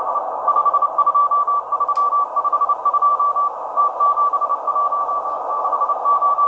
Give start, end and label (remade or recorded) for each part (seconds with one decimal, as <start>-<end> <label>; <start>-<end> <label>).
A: 0.0-0.6 remade; 0.6-2.1 recorded; 2.1-3.1 remade; 3.1-3.8 recorded; 3.8-4.5 remade; 4.5-5.5 recorded; 5.5-6.5 remade